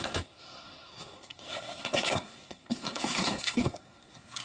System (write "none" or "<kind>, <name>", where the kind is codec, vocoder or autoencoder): codec, SNAC